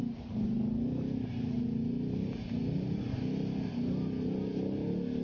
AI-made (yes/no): no